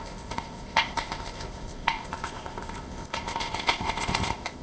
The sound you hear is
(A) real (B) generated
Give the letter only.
B